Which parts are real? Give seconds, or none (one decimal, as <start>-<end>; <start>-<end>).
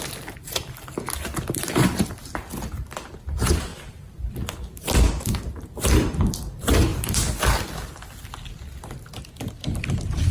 6.9-9.8